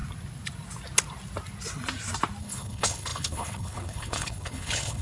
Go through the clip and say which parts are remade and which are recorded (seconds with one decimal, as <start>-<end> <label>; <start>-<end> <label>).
0.0-2.4 recorded; 2.4-5.0 remade